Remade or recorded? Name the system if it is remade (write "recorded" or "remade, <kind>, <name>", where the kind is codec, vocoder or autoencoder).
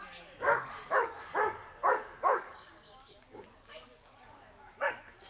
remade, codec, DAC